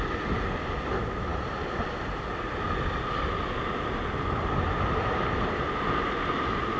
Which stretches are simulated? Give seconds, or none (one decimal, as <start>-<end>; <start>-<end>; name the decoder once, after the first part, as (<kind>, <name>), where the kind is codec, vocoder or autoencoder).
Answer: none